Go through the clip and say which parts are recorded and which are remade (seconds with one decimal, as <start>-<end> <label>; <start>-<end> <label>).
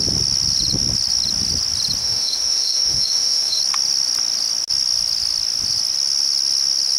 0.0-2.0 recorded; 2.0-3.6 remade; 3.6-7.0 recorded